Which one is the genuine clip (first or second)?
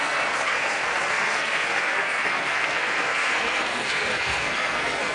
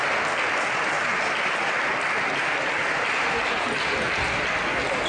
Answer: second